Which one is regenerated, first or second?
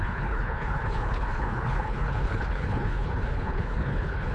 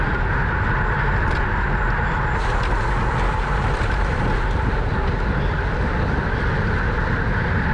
first